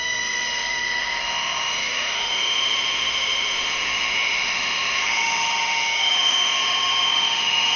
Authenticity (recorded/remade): remade